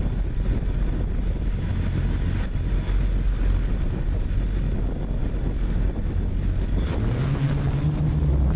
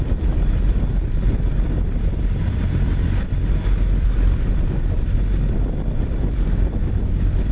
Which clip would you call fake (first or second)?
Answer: second